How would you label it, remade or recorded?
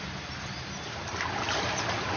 recorded